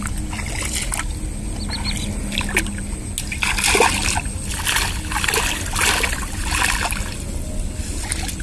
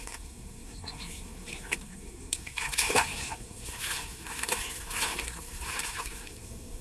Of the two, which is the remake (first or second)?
second